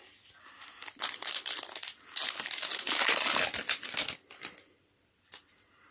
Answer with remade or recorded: remade